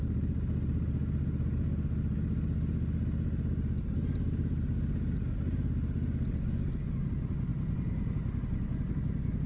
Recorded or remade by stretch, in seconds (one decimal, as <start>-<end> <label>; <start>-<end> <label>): 0.0-9.5 recorded